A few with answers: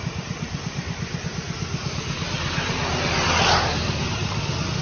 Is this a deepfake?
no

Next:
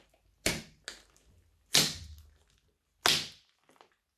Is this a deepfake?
no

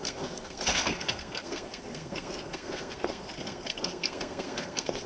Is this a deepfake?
yes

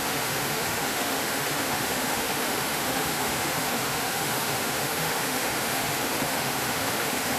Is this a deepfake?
yes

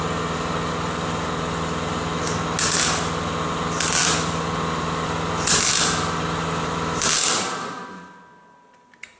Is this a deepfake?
no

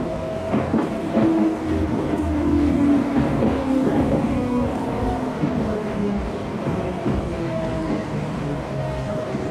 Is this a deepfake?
yes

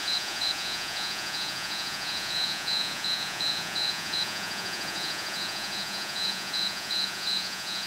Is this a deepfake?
yes